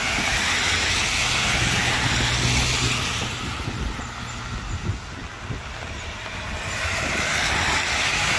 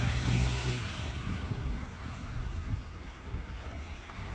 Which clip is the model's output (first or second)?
second